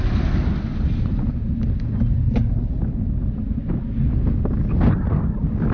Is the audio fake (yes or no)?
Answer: no